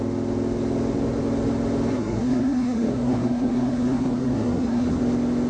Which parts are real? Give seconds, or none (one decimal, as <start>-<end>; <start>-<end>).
0.0-1.9; 5.0-5.5